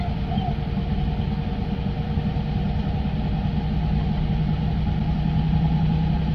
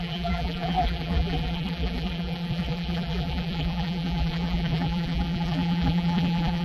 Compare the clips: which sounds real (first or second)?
first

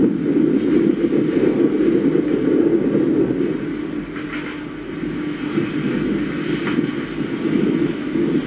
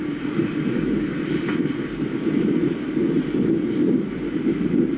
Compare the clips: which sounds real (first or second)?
first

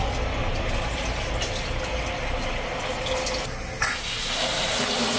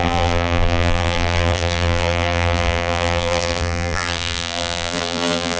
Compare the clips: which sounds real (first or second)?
first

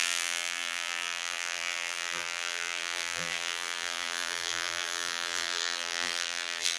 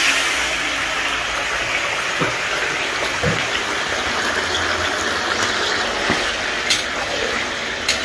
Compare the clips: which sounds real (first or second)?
second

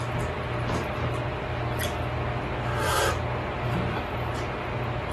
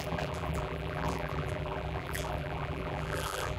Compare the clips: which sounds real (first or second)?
first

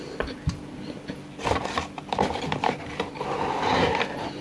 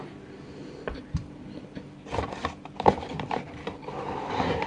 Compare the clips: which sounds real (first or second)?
first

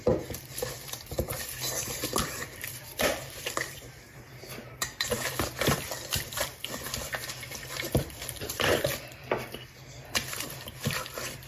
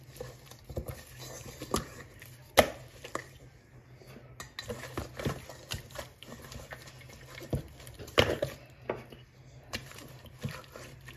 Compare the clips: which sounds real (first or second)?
second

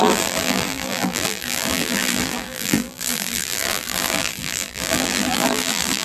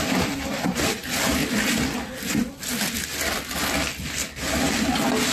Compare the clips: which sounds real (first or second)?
second